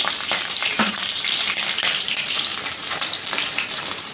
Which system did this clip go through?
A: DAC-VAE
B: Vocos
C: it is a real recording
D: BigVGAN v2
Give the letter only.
D